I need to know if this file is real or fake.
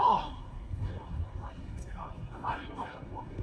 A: fake